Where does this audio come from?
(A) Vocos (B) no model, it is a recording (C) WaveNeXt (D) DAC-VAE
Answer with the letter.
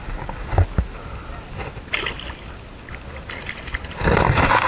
B